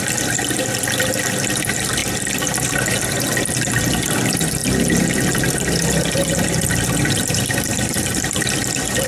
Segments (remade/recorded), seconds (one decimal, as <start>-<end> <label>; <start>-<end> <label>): 0.0-2.0 remade; 2.0-2.8 recorded; 2.8-4.6 remade; 4.6-6.7 recorded; 6.7-9.1 remade